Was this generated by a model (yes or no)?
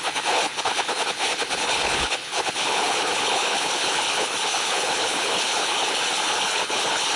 yes